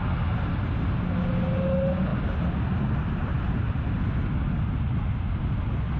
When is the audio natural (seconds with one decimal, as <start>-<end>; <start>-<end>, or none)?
0.0-6.0